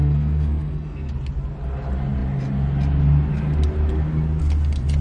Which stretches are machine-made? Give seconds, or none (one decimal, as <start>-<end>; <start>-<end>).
0.0-1.1